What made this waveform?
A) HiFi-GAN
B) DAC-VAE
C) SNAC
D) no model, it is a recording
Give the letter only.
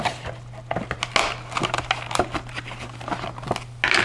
D